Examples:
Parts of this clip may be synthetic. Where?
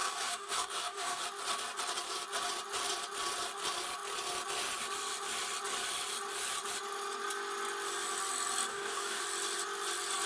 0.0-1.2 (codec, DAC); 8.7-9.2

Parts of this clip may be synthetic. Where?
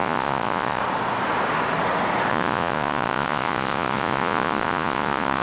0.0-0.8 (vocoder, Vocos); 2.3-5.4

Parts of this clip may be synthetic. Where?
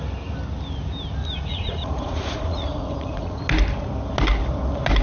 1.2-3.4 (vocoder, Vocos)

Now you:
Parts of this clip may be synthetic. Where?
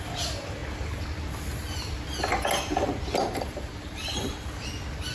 3.2-4.3 (vocoder, BigVGAN v2)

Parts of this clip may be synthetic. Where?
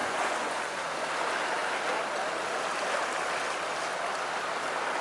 0.0-0.9 (vocoder, Vocos)